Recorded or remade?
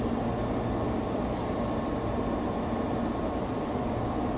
recorded